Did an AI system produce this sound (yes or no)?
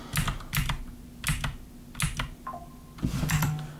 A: no